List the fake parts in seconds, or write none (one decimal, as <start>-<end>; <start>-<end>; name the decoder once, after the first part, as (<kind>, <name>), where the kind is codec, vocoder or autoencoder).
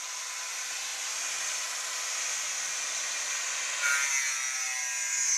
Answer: none